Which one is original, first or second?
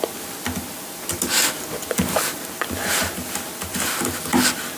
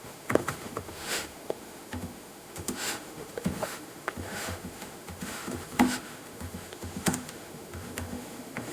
first